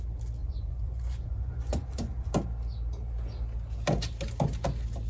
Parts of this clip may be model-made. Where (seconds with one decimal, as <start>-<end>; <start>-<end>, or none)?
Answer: 0.4-2.3